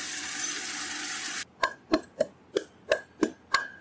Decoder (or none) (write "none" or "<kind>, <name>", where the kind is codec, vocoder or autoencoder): none